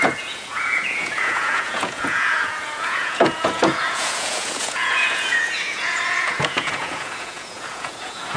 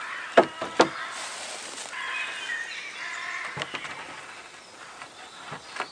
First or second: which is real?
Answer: second